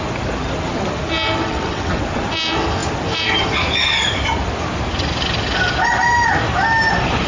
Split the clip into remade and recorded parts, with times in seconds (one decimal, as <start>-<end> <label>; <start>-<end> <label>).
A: 0.0-1.4 recorded; 1.4-2.0 remade; 2.0-7.3 recorded